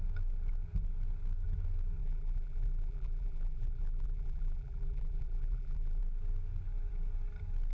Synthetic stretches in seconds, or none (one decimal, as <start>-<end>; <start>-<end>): 2.0-6.0